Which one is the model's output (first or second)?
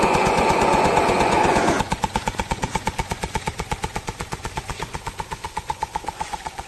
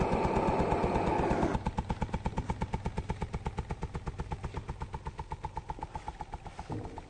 first